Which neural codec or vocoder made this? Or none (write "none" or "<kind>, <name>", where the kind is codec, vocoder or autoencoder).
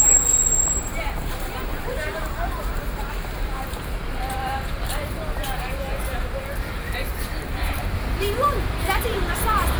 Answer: vocoder, BigVGAN v2